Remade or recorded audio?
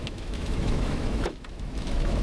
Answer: remade